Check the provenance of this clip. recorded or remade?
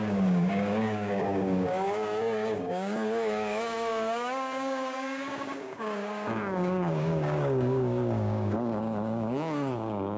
remade